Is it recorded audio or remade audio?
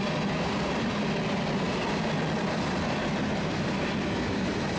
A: recorded